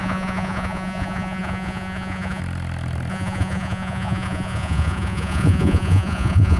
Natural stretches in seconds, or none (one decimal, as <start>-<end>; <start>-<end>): 2.4-3.1